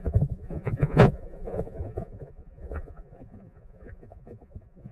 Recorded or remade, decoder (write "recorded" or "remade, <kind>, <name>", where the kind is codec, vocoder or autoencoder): remade, vocoder, Vocos